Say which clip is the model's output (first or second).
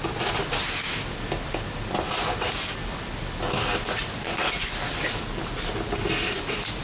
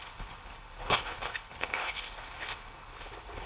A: second